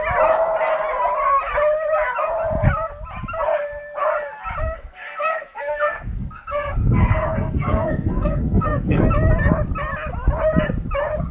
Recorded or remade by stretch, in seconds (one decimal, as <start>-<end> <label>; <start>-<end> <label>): 0.0-4.6 recorded; 4.6-9.0 remade; 9.0-11.3 recorded